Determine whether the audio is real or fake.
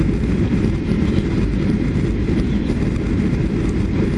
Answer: fake